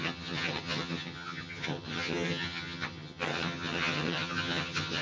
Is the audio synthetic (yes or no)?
yes